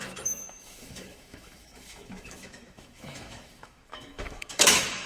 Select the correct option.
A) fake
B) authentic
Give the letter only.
A